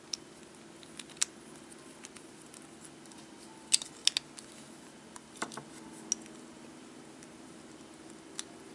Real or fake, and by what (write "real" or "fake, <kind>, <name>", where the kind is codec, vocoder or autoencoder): real